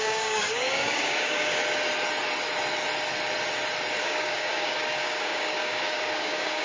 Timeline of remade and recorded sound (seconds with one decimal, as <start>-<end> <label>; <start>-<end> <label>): 0.0-1.6 remade; 1.6-4.0 recorded; 4.0-6.6 remade